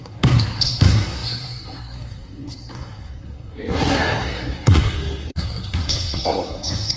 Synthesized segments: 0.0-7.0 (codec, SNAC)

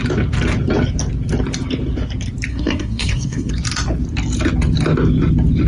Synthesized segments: 2.5-3.5 (codec, SNAC)

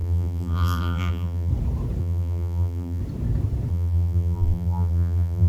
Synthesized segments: 0.0-1.5 (vocoder, BigVGAN v2); 2.0-3.0; 3.7-5.5